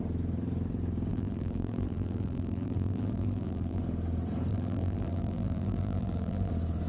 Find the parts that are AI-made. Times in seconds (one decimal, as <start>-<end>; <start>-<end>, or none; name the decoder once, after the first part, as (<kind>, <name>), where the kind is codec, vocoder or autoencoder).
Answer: 1.1-3.8 (vocoder, BigVGAN v2); 4.5-6.5